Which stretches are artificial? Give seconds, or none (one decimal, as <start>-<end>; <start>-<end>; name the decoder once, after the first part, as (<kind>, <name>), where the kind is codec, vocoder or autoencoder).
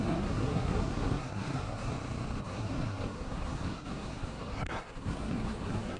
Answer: 0.0-1.9 (codec, SNAC); 2.4-6.0